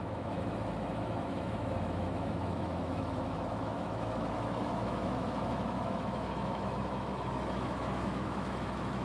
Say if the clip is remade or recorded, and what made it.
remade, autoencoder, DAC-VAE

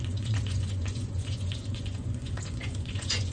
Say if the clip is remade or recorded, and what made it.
remade, vocoder, Vocos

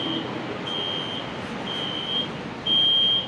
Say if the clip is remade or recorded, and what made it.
recorded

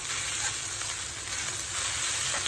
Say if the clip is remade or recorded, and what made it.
recorded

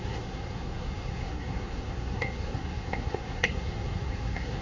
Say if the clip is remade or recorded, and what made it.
remade, codec, SNAC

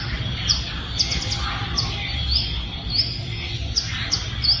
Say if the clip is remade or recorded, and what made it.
recorded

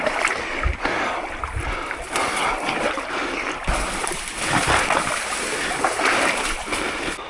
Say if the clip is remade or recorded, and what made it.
recorded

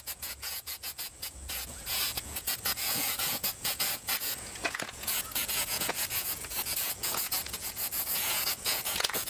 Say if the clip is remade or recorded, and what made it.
remade, vocoder, Vocos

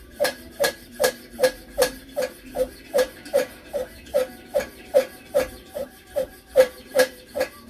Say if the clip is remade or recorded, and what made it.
remade, vocoder, BigVGAN v2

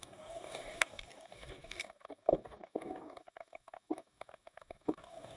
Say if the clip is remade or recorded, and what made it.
remade, codec, DAC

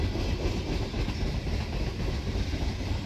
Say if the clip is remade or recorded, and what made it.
recorded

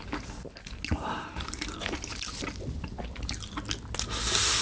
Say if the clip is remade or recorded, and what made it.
recorded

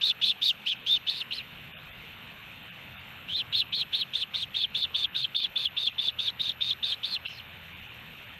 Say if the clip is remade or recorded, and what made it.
remade, codec, HILCodec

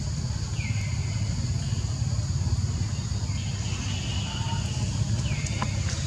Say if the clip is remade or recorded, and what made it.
recorded